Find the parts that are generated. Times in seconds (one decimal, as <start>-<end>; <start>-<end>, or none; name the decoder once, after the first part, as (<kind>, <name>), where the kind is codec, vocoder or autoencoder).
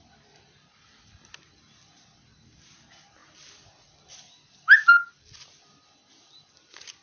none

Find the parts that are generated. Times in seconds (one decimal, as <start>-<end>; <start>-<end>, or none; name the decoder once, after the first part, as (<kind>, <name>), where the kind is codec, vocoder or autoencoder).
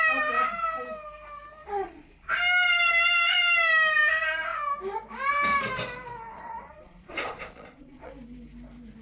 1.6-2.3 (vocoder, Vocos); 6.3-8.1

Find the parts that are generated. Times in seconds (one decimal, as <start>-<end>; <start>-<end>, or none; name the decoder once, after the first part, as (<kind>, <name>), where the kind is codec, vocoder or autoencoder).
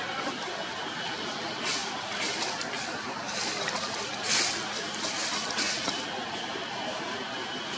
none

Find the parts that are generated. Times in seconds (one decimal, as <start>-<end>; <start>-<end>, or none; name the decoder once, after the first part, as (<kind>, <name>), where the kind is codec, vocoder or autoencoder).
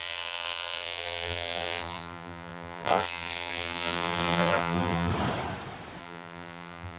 0.0-5.1 (vocoder, BigVGAN v2); 6.0-7.0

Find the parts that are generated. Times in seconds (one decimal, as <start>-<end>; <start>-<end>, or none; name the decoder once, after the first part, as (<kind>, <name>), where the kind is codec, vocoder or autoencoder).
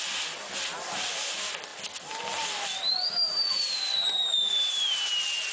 1.7-4.5 (vocoder, BigVGAN v2)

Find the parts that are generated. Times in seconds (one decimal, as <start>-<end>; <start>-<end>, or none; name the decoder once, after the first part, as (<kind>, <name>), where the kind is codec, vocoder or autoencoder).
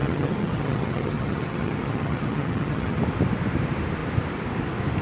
0.0-3.0 (vocoder, HiFi-GAN)